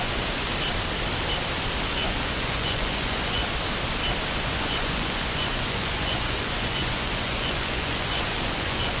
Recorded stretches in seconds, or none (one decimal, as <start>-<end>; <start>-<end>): 0.5-1.9; 3.4-4.3